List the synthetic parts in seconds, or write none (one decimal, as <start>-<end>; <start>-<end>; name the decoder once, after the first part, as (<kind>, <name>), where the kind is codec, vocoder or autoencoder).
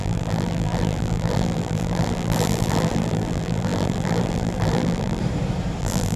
0.0-5.2 (vocoder, BigVGAN v2); 5.8-6.2